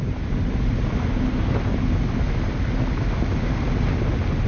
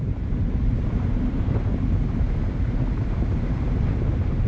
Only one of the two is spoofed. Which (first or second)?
second